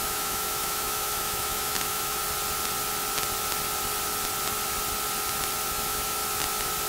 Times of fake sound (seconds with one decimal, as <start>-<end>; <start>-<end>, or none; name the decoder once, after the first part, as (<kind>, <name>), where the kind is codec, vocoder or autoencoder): 0.0-2.2 (autoencoder, DAC-VAE); 5.7-6.2